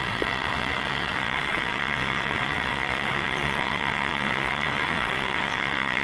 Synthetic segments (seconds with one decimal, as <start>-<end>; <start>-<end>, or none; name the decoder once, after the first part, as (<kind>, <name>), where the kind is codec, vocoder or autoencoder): 0.0-6.0 (vocoder, WaveNeXt)